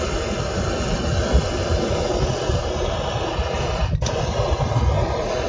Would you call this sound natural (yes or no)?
yes